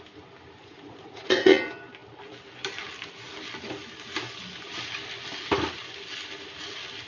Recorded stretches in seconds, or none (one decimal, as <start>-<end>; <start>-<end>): 0.0-0.6; 1.6-7.1